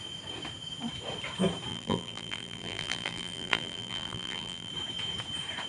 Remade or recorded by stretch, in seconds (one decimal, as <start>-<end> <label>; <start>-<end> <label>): 0.0-1.7 recorded; 1.7-4.7 remade; 4.7-5.7 recorded